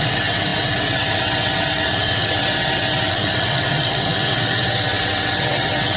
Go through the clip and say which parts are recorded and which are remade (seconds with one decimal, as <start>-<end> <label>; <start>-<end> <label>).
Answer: 0.0-6.0 remade